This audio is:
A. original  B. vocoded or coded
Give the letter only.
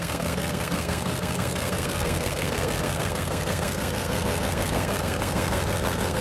B